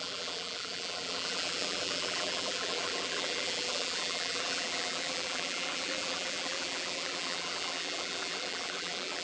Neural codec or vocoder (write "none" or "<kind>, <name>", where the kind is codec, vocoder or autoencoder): vocoder, BigVGAN v2